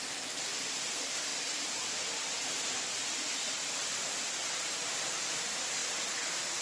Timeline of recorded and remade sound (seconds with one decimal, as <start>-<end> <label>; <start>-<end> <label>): 0.0-6.6 recorded

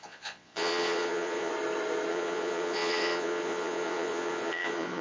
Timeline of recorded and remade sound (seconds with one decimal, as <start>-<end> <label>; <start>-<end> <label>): 0.0-1.5 remade; 1.5-2.1 recorded; 2.1-5.0 remade

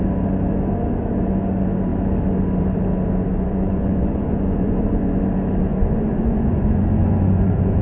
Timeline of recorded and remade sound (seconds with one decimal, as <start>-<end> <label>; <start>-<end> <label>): 0.0-3.3 recorded; 3.3-5.2 remade; 5.2-5.7 recorded; 5.7-7.8 remade

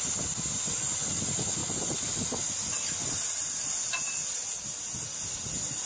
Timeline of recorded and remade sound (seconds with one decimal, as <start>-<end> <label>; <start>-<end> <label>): 0.0-5.9 recorded

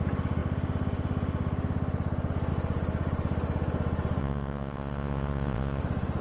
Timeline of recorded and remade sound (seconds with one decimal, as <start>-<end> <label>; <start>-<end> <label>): 0.0-4.2 recorded; 4.2-5.8 remade; 5.8-6.2 recorded

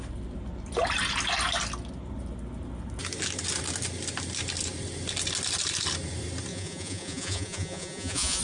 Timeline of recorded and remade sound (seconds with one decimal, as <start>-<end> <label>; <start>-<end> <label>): 0.0-6.5 recorded; 6.5-8.4 remade